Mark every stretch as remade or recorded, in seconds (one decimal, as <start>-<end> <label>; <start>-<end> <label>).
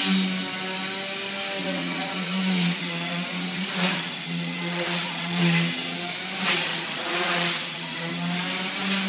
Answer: 0.0-1.6 recorded; 1.6-5.4 remade; 5.4-6.7 recorded; 6.7-8.1 remade; 8.1-9.1 recorded